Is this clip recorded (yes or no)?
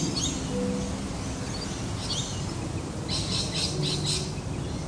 yes